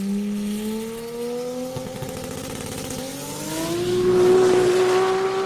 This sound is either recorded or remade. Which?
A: recorded